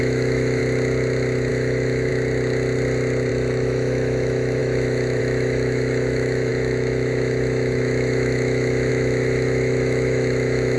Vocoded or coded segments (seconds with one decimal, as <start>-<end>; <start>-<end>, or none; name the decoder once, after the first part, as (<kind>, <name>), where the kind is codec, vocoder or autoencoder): 0.0-0.6 (autoencoder, DAC-VAE); 1.5-2.1; 3.3-10.8